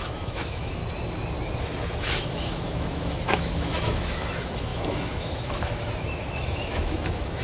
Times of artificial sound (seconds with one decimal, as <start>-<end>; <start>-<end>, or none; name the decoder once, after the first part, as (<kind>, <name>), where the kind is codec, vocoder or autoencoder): 0.0-0.8 (autoencoder, DAC-VAE); 1.6-7.4